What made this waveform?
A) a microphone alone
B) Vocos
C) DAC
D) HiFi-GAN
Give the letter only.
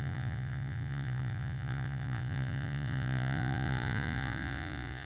B